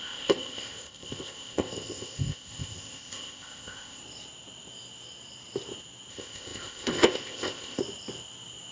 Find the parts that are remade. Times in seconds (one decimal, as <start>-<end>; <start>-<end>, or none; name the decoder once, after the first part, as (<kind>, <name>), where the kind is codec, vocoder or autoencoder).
0.0-4.0 (codec, ZipCodec); 6.1-7.8